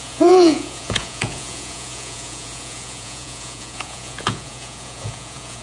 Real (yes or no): no